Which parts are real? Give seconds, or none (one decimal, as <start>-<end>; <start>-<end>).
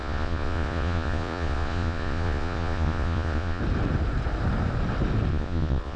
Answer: 3.6-5.3